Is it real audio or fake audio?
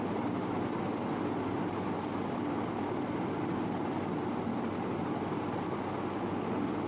real